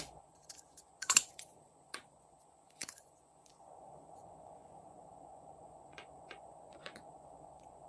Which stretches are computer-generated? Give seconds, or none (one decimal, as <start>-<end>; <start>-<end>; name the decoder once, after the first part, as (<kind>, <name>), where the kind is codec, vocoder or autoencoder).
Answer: 0.0-7.9 (vocoder, Vocos)